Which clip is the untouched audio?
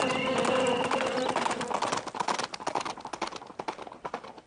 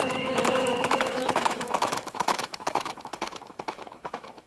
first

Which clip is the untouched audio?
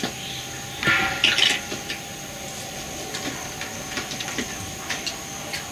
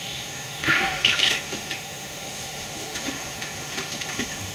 first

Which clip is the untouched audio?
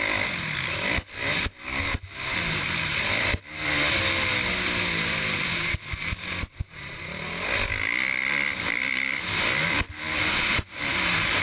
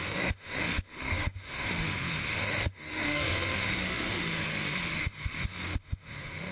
first